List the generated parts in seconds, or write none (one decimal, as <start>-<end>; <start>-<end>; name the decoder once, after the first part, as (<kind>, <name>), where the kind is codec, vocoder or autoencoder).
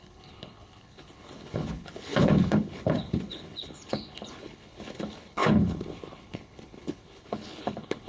0.0-8.1 (codec, HILCodec)